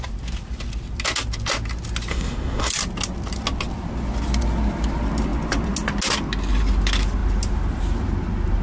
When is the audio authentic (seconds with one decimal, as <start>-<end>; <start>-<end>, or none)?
0.0-2.1; 2.7-8.6